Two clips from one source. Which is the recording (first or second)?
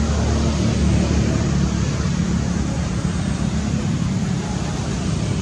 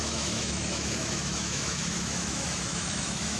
first